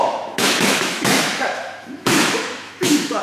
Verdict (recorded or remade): remade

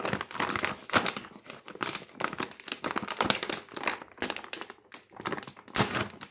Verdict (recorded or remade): recorded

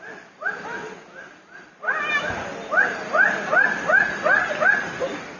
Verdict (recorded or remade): recorded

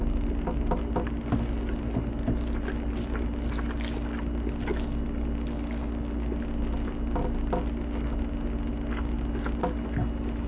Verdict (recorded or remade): recorded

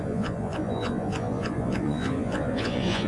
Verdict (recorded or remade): remade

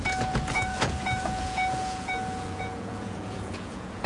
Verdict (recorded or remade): remade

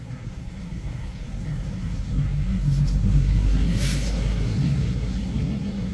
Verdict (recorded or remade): remade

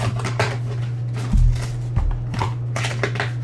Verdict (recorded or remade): recorded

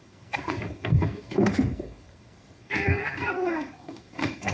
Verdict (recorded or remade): remade